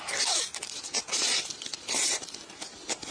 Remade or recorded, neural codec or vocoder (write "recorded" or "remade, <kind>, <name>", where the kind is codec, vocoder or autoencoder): recorded